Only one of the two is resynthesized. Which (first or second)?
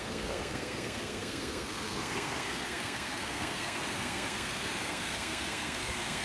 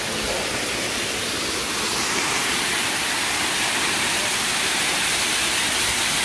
first